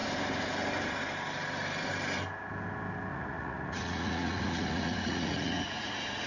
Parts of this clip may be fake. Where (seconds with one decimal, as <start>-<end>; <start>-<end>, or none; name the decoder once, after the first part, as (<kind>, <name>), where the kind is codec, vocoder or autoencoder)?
3.1-6.3 (vocoder, Vocos)